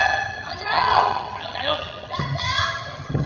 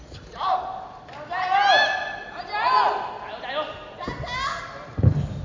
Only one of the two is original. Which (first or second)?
second